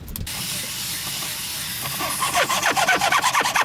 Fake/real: real